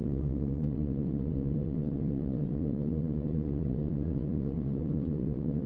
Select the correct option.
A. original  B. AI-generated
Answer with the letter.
B